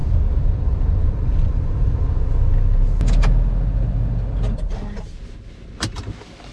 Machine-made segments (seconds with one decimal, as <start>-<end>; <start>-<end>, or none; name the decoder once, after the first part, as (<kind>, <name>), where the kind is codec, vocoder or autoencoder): 0.0-1.9 (vocoder, BigVGAN v2)